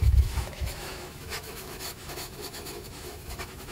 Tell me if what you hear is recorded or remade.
remade